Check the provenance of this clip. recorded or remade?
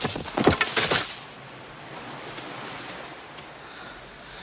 recorded